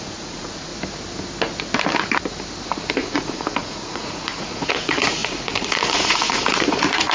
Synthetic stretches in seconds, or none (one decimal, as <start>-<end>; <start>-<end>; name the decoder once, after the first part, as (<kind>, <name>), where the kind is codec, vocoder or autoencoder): 0.0-0.7 (vocoder, Vocos); 2.9-7.1